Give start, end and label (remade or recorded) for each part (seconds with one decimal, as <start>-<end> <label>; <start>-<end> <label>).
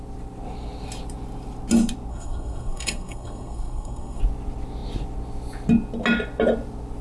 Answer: 0.0-2.1 recorded; 2.1-4.2 remade; 4.2-7.0 recorded